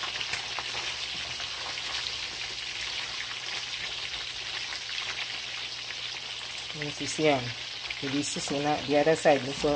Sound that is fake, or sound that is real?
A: real